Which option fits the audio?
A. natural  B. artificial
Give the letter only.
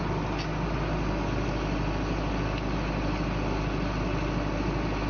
A